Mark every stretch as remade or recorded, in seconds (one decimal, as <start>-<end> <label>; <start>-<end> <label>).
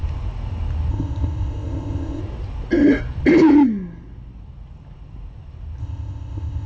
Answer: 0.0-0.9 recorded; 0.9-2.2 remade; 2.2-5.8 recorded; 5.8-6.7 remade